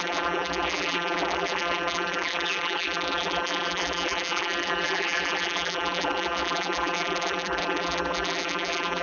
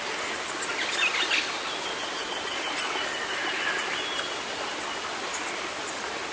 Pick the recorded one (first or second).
second